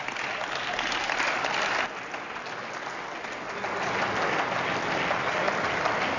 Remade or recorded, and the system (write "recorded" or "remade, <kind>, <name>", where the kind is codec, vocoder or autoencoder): recorded